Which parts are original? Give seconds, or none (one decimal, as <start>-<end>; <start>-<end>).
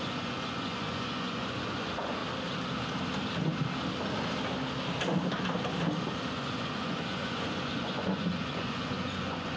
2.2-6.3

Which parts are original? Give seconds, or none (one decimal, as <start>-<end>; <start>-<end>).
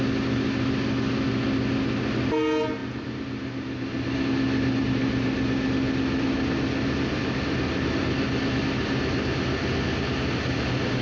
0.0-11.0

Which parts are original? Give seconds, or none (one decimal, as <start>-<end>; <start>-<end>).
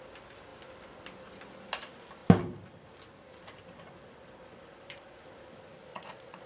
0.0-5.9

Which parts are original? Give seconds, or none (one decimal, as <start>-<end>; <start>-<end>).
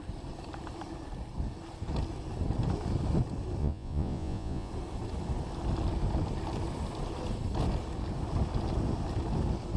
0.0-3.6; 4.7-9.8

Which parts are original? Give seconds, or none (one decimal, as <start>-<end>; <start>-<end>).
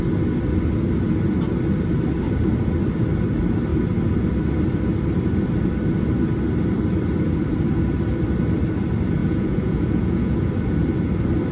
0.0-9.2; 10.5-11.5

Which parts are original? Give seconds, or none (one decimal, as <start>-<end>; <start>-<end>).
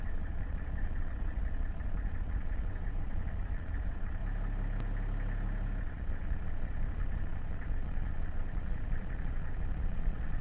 4.2-5.8